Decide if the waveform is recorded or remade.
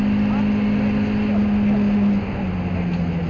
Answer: recorded